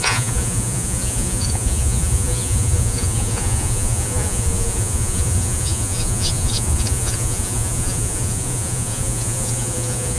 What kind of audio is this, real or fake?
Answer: fake